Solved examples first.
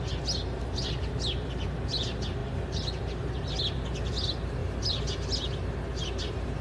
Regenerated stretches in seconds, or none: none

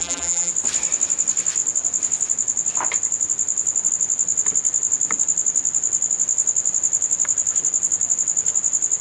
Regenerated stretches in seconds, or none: 0.0-0.5 (vocoder, BigVGAN v2)